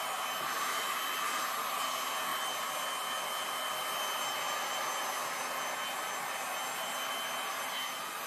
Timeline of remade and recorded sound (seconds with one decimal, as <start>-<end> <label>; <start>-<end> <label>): 0.0-8.3 recorded